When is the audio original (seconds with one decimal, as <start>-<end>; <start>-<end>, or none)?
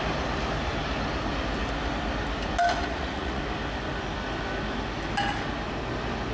0.0-2.8; 3.4-6.3